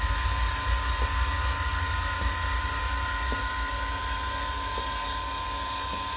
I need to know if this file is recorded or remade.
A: recorded